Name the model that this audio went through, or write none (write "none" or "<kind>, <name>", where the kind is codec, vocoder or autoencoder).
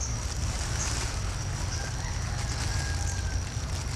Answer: none